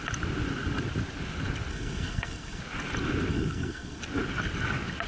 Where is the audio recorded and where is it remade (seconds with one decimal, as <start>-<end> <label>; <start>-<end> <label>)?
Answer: 0.0-1.7 recorded; 1.7-2.6 remade; 2.6-3.3 recorded; 3.3-4.0 remade; 4.0-5.1 recorded